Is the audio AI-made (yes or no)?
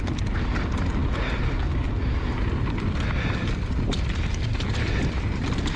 no